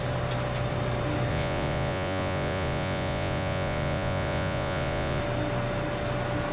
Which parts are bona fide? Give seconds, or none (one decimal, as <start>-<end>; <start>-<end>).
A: 0.0-1.3; 5.2-6.5